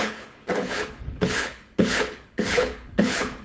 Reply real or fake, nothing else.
fake